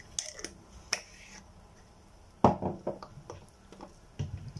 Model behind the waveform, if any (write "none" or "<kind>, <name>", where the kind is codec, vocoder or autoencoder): none